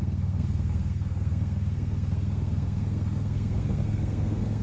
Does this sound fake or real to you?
fake